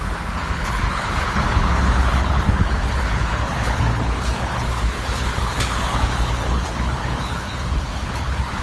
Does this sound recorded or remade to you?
remade